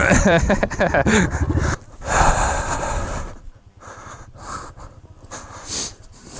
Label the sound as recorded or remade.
remade